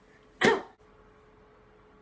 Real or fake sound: real